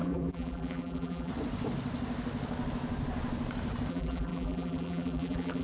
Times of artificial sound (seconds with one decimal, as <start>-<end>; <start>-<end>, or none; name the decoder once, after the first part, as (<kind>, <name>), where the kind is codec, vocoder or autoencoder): 0.0-1.3 (vocoder, BigVGAN v2); 3.9-5.6